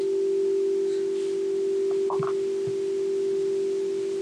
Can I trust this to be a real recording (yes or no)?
yes